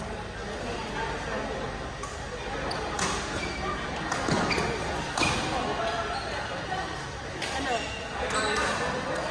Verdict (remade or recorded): recorded